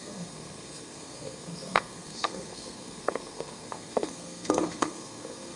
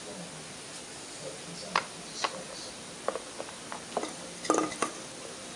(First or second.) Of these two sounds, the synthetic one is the first